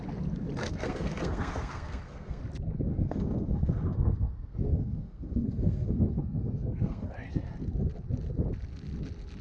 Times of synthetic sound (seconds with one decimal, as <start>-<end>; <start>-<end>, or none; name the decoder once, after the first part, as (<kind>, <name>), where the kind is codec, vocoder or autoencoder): 0.6-2.4 (codec, SNAC); 2.9-7.1